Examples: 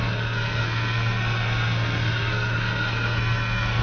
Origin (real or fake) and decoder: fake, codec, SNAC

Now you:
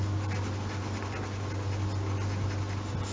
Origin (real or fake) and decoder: real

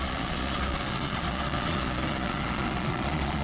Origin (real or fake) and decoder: fake, vocoder, Vocos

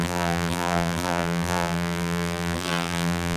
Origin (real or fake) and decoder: fake, vocoder, BigVGAN v2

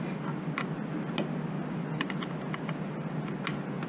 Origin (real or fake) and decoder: real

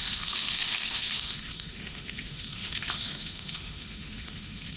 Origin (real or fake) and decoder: fake, autoencoder, DAC-VAE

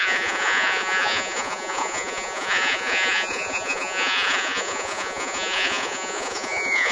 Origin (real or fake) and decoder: fake, vocoder, Vocos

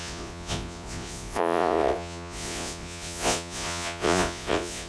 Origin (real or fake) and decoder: fake, vocoder, Vocos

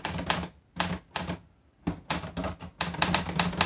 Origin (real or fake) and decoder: real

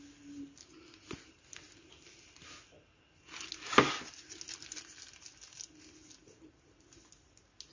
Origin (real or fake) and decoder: real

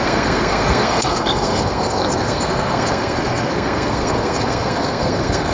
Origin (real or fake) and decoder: fake, codec, SNAC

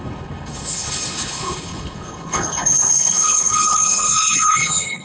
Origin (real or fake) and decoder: fake, codec, HILCodec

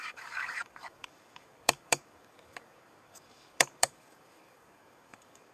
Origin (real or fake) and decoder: fake, codec, DAC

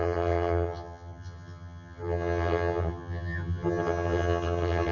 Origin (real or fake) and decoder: fake, vocoder, HiFi-GAN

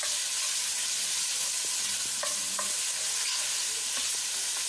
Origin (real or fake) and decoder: real